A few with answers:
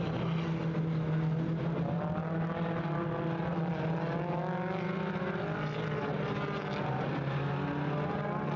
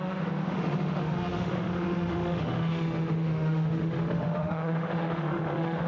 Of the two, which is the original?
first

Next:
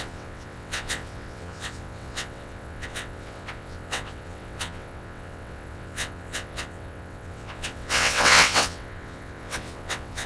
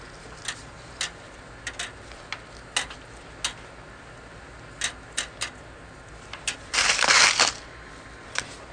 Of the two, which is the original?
second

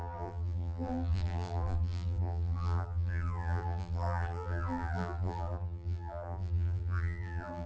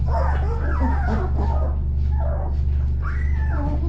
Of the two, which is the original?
second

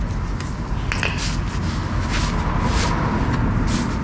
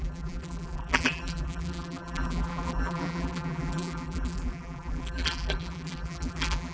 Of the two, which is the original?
first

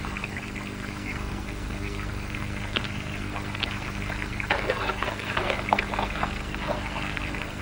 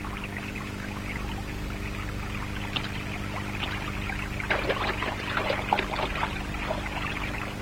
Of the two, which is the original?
second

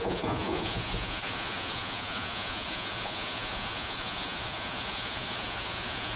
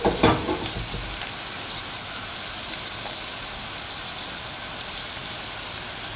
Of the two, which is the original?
second